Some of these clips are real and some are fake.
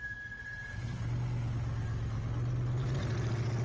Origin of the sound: real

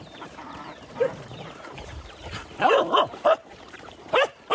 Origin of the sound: fake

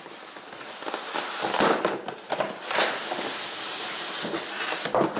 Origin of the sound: real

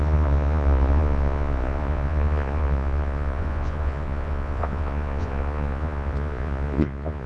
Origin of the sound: fake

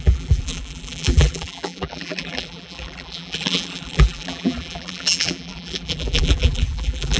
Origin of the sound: fake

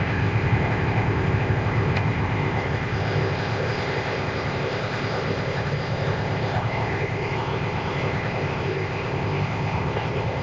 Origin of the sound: fake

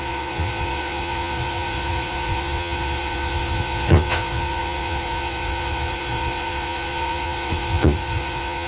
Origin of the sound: fake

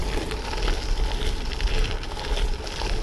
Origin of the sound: real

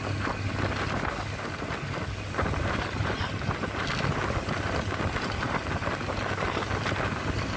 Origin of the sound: real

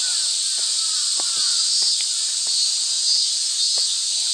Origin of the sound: real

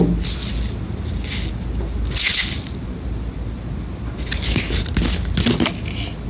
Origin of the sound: real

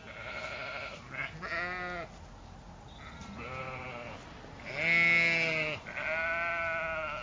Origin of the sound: real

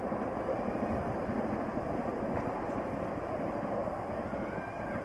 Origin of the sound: real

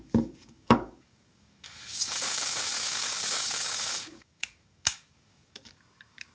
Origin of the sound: fake